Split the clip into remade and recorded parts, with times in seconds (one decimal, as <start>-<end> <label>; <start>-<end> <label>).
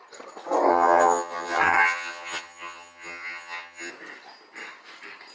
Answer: 0.0-0.7 recorded; 0.7-3.9 remade; 3.9-5.3 recorded